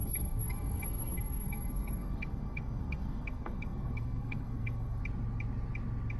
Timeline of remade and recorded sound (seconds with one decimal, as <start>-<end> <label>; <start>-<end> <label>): 0.0-5.0 remade; 5.0-6.2 recorded